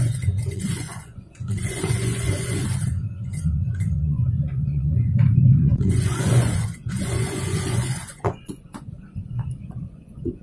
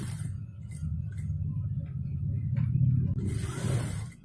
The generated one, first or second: first